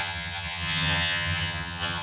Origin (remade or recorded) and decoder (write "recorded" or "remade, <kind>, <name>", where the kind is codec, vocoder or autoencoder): remade, vocoder, HiFi-GAN